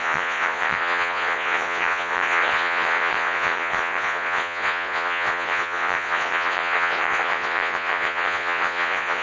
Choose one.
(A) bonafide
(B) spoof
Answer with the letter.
B